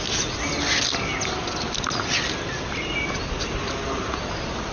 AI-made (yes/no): no